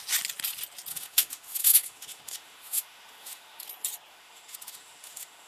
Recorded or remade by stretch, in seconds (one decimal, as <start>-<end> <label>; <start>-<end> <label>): 0.0-0.9 recorded; 0.9-3.6 remade; 3.6-4.1 recorded; 4.1-5.5 remade